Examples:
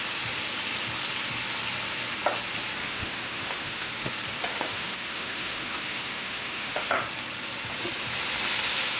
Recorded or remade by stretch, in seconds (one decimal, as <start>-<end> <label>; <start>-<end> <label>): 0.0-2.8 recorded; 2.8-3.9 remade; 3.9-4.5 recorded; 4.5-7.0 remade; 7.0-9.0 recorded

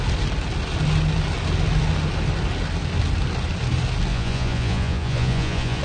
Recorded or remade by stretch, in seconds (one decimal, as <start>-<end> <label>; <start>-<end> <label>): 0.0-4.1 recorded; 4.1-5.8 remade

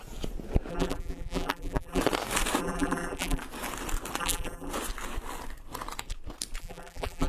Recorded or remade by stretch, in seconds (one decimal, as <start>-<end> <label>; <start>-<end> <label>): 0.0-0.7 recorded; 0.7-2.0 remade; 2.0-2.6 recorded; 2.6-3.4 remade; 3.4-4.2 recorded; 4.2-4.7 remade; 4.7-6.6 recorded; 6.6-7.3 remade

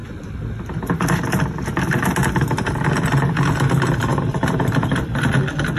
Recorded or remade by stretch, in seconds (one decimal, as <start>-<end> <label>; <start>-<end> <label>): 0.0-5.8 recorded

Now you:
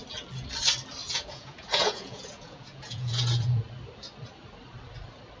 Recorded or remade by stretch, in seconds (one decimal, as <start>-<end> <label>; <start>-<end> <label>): 0.0-1.0 recorded; 1.0-3.6 remade; 3.6-5.4 recorded